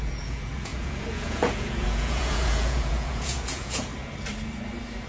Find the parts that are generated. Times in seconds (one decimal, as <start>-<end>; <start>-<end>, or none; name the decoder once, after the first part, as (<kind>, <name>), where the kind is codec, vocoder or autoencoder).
0.0-3.9 (vocoder, Vocos)